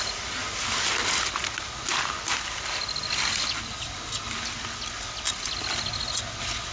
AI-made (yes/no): no